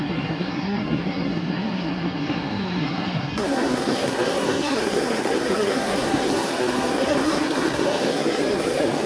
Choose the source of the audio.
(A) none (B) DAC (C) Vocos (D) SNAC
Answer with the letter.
D